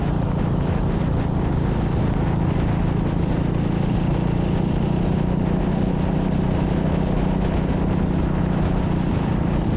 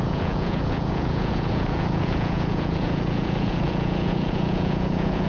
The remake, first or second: second